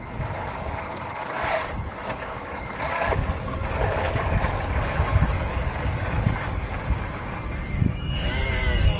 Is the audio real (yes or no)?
no